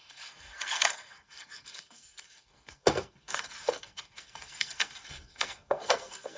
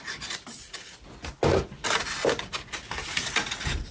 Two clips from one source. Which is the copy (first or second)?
first